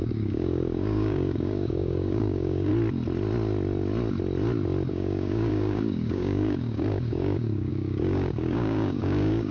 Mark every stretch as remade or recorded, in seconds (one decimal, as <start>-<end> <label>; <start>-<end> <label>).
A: 0.0-2.7 remade; 2.7-4.9 recorded; 4.9-9.5 remade